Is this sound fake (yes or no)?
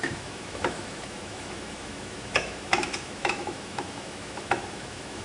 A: yes